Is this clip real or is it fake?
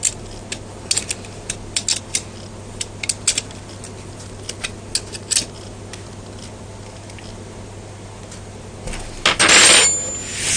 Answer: real